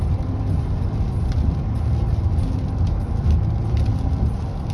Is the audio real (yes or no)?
no